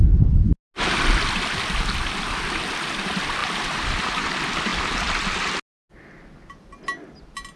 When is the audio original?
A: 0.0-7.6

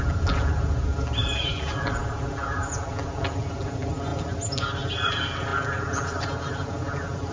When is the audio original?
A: 0.0-7.3

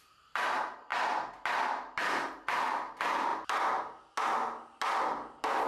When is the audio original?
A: 0.9-2.3; 3.3-5.7

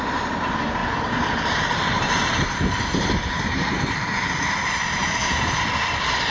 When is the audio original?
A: 0.0-0.8; 4.6-5.0; 5.6-6.3

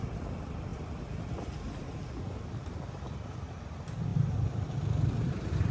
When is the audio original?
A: none

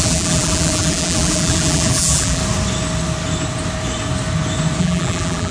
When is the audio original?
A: 2.4-4.8

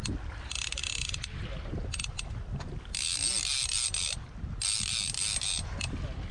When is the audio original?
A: 0.0-6.3

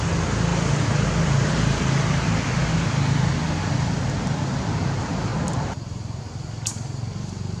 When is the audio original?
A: 0.0-0.5; 4.2-5.3; 6.2-7.6